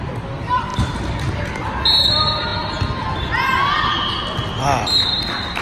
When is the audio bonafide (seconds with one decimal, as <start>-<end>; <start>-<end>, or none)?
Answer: 0.0-5.6

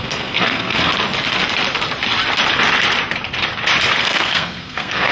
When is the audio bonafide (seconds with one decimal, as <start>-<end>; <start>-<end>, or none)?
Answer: 0.9-4.0

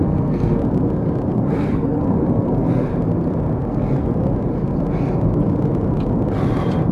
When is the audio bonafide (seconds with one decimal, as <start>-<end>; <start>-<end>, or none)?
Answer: 0.6-1.3; 2.9-3.6; 4.1-6.9

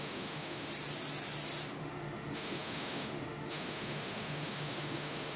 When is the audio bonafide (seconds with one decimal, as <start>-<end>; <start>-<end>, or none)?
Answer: 0.7-1.8

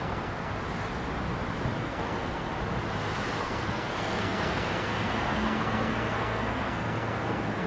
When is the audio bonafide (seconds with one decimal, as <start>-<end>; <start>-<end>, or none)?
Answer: 0.5-1.8; 2.5-3.4

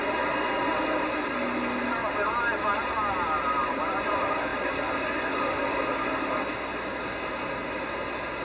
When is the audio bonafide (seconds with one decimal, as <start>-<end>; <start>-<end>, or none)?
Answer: 0.0-2.7; 4.1-8.4